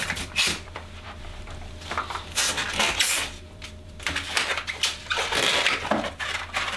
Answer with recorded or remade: remade